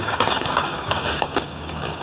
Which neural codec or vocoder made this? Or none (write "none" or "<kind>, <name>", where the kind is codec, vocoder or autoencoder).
codec, DAC